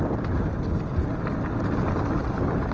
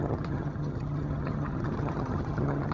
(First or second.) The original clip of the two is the first